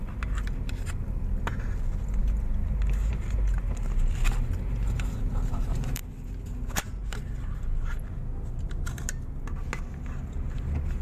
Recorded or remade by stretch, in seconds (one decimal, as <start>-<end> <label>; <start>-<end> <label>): 0.0-11.0 recorded

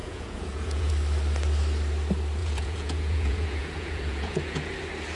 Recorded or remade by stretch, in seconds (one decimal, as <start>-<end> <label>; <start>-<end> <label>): 0.0-0.9 remade; 0.9-2.4 recorded; 2.4-4.7 remade; 4.7-5.2 recorded